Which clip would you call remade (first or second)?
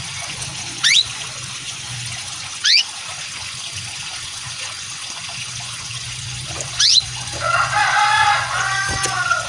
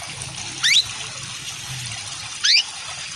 first